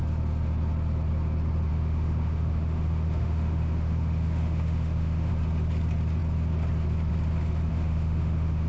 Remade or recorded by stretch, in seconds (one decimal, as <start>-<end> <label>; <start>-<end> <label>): 0.0-1.7 recorded; 1.7-5.3 remade; 5.3-7.7 recorded; 7.7-8.7 remade